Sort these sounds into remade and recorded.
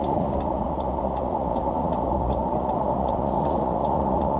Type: remade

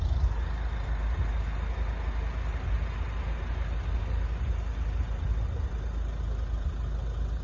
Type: recorded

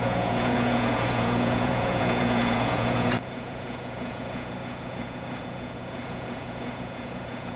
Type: remade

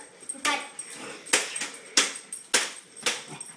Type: recorded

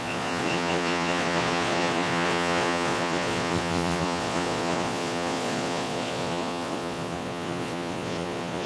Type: remade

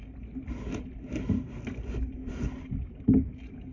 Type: recorded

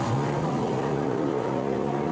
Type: remade